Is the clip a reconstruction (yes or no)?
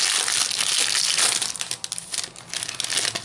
no